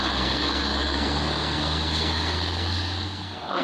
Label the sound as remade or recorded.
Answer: remade